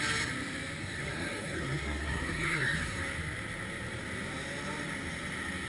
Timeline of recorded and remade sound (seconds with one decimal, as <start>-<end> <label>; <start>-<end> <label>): 0.0-0.8 recorded; 0.8-3.0 remade; 3.0-5.7 recorded

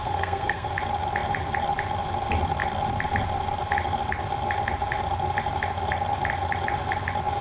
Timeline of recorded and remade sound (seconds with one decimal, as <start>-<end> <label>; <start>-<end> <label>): 0.0-0.7 remade; 0.7-7.4 recorded

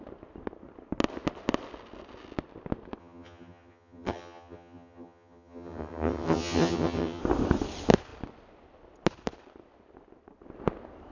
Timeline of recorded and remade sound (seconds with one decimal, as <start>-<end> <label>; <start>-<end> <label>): 0.0-3.0 recorded; 3.0-7.2 remade; 7.2-11.1 recorded

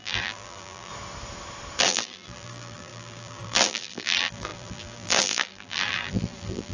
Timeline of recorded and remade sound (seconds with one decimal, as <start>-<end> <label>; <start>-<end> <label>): 0.0-0.9 remade; 0.9-1.8 recorded; 1.8-6.7 remade

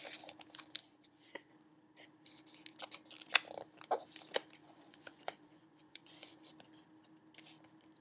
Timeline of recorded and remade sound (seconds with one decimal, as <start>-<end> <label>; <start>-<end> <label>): 0.0-0.8 recorded; 0.8-1.5 remade; 1.5-4.6 recorded; 4.6-6.4 remade; 6.4-8.0 recorded

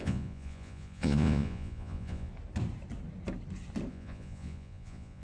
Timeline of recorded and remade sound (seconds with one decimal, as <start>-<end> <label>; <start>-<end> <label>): 0.0-2.3 remade; 2.3-3.9 recorded; 3.9-5.2 remade

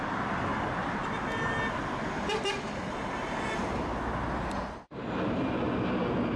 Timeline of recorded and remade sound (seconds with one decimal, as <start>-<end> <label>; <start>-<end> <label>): 0.0-6.4 recorded

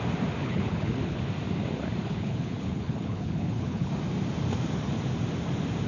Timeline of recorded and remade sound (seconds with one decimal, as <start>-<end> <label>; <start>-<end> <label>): 0.0-0.4 recorded; 0.4-1.2 remade; 1.2-2.0 recorded; 2.0-3.9 remade; 3.9-5.9 recorded